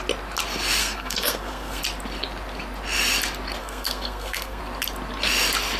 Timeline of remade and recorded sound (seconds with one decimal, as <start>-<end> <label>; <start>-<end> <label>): 0.0-0.8 recorded; 0.8-1.8 remade; 1.8-3.6 recorded; 3.6-4.6 remade; 4.6-5.8 recorded